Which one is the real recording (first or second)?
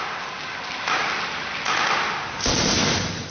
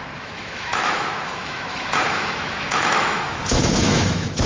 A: first